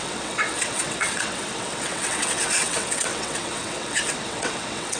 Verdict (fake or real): fake